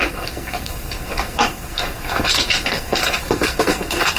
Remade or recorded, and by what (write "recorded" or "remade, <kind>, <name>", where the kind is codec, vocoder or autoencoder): remade, codec, SNAC